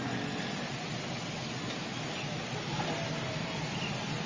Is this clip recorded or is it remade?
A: recorded